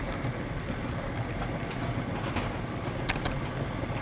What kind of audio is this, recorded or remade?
recorded